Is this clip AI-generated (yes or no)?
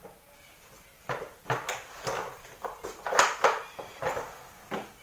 no